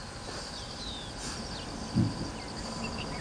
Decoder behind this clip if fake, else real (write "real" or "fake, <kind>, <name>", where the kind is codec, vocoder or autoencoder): real